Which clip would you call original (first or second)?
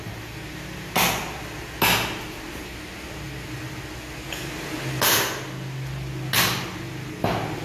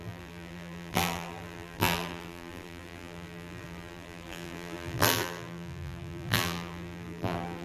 first